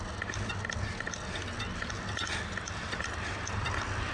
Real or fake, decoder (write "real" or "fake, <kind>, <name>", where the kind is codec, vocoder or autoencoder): real